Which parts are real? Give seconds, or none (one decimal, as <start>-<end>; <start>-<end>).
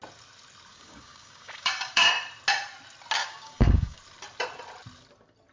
0.0-0.7; 2.1-3.2; 4.0-5.5